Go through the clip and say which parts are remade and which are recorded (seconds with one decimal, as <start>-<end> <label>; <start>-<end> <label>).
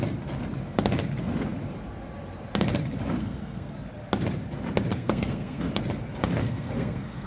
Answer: 0.0-3.2 recorded; 3.2-3.7 remade; 3.7-4.9 recorded; 4.9-5.7 remade; 5.7-6.4 recorded; 6.4-7.3 remade